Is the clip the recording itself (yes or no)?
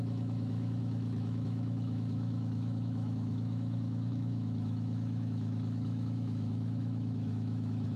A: no